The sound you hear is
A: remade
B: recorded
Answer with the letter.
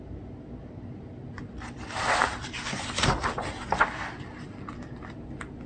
B